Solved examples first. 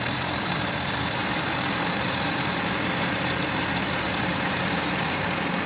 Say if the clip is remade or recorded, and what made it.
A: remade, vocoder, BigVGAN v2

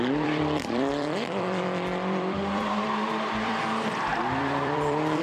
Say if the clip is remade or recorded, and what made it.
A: remade, vocoder, BigVGAN v2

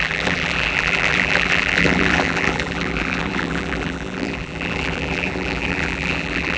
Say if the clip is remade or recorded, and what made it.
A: remade, vocoder, BigVGAN v2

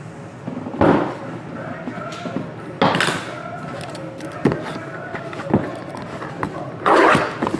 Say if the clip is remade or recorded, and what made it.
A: recorded